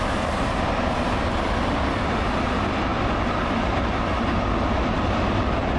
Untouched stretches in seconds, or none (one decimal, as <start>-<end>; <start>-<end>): 0.0-5.8